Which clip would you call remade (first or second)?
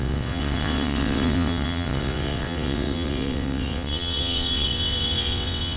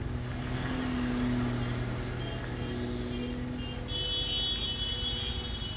first